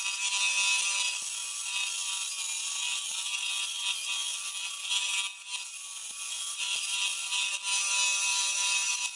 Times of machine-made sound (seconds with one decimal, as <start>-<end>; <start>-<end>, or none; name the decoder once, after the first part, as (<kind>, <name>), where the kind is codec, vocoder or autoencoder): 8.3-9.2 (vocoder, BigVGAN v2)

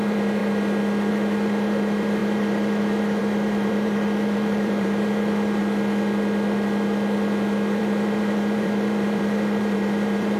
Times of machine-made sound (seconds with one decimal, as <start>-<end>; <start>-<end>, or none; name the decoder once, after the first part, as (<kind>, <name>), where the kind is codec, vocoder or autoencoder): 0.0-0.4 (vocoder, BigVGAN v2); 1.1-5.6; 7.8-10.4

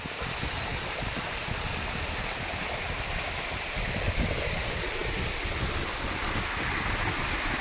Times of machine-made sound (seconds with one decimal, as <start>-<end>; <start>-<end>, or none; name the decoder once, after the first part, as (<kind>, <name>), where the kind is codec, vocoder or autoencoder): 0.7-4.2 (vocoder, BigVGAN v2)

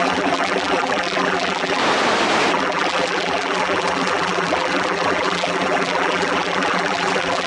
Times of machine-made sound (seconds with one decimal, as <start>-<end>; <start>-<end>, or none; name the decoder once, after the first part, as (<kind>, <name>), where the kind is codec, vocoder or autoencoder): 0.0-1.8 (vocoder, BigVGAN v2); 2.5-7.5

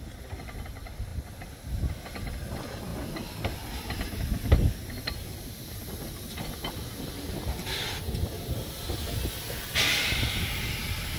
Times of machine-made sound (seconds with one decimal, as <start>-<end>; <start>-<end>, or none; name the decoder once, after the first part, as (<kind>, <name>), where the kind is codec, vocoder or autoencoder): none

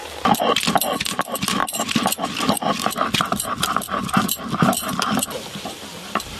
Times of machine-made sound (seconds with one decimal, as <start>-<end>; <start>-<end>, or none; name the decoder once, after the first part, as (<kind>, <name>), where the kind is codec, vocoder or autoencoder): 0.0-1.2 (vocoder, BigVGAN v2); 1.6-4.6

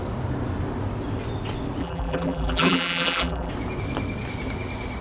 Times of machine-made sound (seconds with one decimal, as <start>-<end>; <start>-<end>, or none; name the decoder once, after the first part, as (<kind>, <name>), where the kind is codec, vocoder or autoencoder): 1.8-3.5 (vocoder, BigVGAN v2)

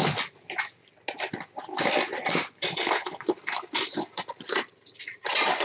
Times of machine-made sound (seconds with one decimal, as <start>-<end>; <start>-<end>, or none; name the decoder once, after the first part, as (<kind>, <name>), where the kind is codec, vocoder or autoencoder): 3.4-5.6 (vocoder, BigVGAN v2)